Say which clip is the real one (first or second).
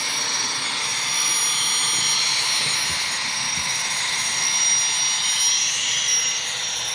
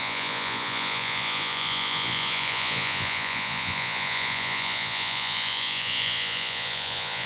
first